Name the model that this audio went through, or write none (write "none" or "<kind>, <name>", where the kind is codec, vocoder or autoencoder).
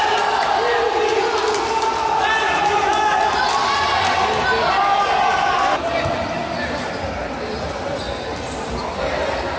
none